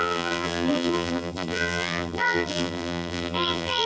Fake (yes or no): yes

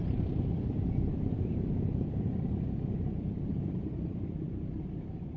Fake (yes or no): yes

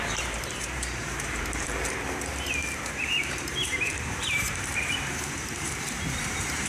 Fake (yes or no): yes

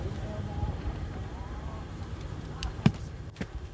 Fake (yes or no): yes